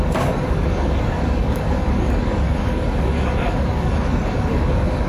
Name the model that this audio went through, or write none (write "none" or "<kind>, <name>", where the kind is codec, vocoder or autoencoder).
codec, DAC